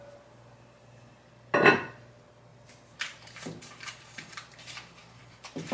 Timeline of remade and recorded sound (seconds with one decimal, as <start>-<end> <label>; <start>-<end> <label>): 0.0-2.5 recorded; 2.5-5.2 remade; 5.2-5.7 recorded